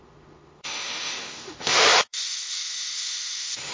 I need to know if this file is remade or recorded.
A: remade